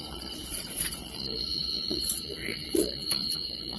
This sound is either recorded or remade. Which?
remade